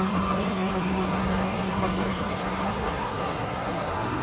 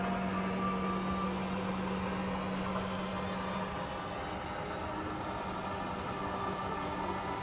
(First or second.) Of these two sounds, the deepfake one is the first